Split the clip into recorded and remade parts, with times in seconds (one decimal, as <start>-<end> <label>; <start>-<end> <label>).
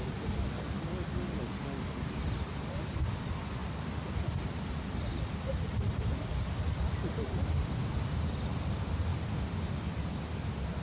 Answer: 0.0-10.8 recorded